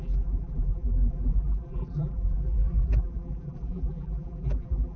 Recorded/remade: remade